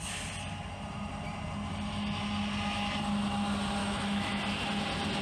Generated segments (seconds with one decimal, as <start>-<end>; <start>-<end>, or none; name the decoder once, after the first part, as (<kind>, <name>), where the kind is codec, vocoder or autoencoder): 3.8-4.4 (autoencoder, DAC-VAE)

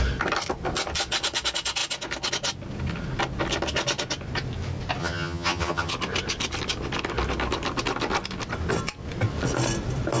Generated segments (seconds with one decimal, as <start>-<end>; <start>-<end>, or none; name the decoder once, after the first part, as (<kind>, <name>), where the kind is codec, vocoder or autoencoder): 5.0-5.9 (vocoder, HiFi-GAN)

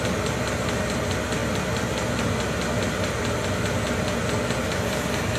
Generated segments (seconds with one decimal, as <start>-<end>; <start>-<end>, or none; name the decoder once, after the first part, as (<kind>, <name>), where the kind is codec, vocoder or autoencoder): none